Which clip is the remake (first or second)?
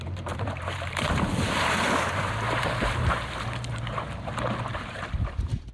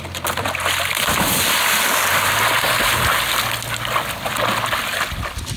first